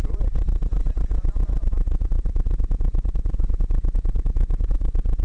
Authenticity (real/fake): fake